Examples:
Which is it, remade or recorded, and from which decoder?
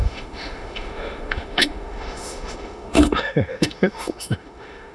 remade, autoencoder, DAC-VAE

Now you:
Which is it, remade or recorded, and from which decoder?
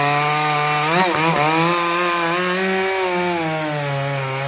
recorded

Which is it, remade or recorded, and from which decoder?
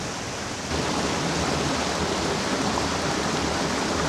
recorded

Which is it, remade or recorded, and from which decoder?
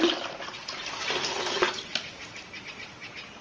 recorded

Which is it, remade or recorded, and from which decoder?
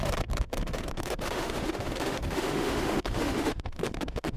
remade, autoencoder, DAC-VAE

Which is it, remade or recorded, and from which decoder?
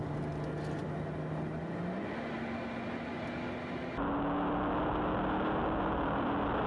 recorded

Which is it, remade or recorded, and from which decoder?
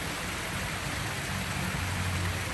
recorded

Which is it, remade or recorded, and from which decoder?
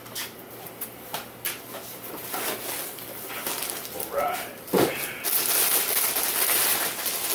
recorded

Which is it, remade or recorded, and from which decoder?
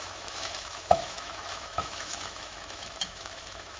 remade, autoencoder, DAC-VAE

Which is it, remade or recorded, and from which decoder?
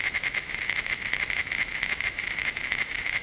remade, autoencoder, DAC-VAE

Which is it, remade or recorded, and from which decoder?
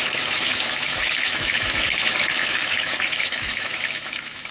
remade, autoencoder, DAC-VAE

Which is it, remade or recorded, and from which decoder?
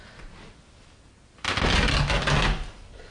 recorded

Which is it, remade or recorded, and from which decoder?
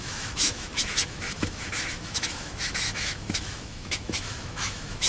remade, autoencoder, DAC-VAE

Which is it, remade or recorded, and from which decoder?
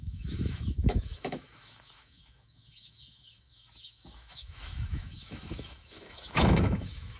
remade, autoencoder, DAC-VAE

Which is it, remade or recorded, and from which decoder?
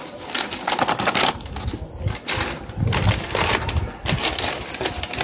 recorded